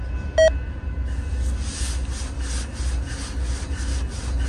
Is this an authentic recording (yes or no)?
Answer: yes